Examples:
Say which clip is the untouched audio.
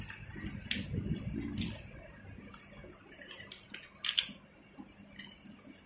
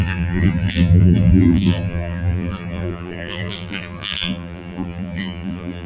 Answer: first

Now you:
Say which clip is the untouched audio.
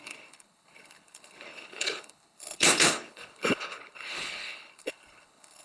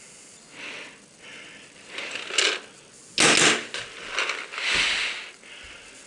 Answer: second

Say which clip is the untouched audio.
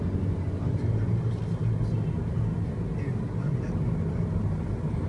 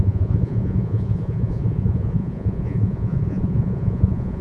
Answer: first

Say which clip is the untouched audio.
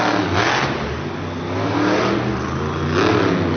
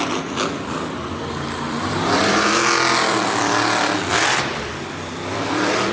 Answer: first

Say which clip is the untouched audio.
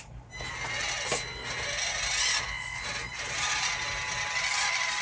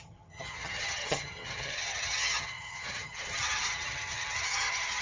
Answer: first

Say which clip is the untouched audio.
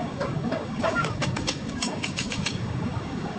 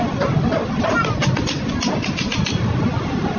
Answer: second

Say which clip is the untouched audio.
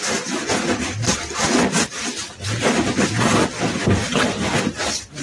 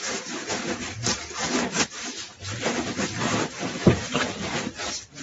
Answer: first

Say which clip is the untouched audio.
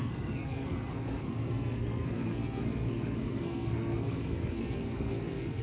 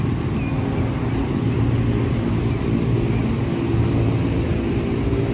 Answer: second